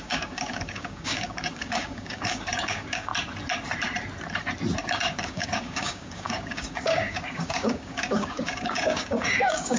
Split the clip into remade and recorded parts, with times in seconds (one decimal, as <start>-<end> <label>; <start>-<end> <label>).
0.0-3.1 remade; 3.1-4.9 recorded; 4.9-9.8 remade